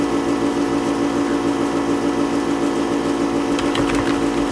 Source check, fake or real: fake